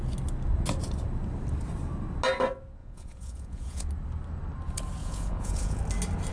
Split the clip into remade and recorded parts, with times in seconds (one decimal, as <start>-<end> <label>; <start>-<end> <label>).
0.0-2.8 recorded; 2.8-3.8 remade; 3.8-5.0 recorded; 5.0-5.8 remade; 5.8-6.3 recorded